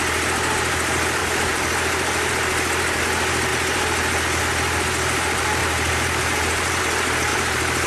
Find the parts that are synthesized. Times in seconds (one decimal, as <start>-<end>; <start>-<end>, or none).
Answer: 5.6-6.8; 7.3-7.9